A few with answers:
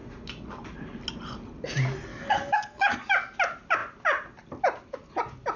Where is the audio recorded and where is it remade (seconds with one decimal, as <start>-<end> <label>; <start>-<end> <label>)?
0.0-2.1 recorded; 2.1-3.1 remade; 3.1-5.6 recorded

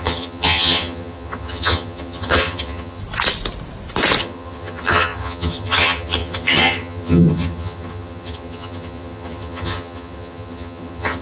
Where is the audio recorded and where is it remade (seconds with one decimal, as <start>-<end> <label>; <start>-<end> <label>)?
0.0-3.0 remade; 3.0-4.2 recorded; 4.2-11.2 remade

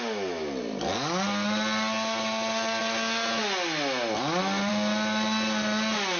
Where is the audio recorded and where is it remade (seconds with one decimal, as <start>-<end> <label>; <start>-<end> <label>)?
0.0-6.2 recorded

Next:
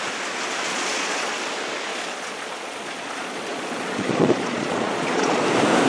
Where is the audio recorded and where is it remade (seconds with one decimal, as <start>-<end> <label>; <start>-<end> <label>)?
0.0-0.7 recorded; 0.7-1.3 remade; 1.3-1.9 recorded; 1.9-5.4 remade; 5.4-5.9 recorded

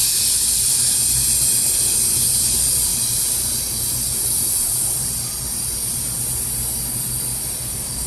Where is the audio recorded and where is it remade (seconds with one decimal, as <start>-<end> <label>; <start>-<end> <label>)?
0.0-8.1 recorded

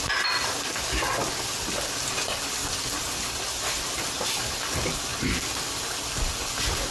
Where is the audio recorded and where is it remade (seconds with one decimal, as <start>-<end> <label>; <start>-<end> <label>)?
0.0-6.9 recorded